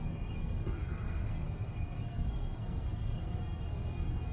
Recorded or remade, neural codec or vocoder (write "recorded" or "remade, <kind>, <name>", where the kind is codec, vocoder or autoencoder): remade, codec, SNAC